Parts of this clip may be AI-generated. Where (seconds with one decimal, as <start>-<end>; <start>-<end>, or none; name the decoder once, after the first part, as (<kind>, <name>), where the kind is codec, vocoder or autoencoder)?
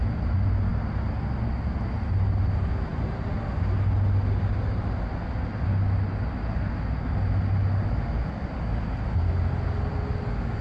none